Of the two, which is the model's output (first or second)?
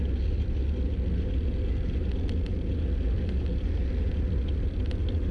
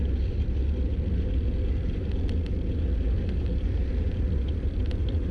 second